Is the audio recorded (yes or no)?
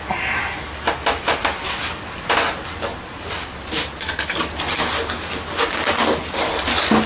yes